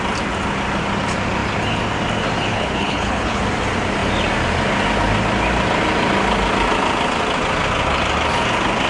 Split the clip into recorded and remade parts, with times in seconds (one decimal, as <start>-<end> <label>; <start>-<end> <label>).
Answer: 0.0-2.5 recorded; 2.5-3.4 remade; 3.4-8.9 recorded